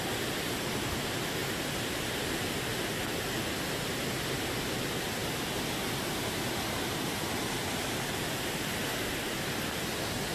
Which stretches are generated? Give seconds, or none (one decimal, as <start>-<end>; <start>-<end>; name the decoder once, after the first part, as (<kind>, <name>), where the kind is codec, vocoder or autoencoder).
1.4-2.3 (vocoder, BigVGAN v2)